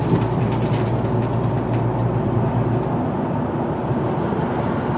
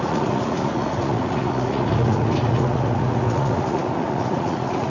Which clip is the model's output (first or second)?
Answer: second